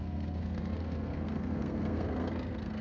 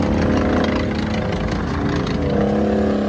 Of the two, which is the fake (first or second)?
first